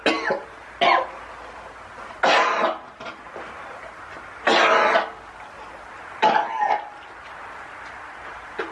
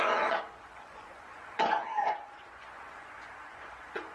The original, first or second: first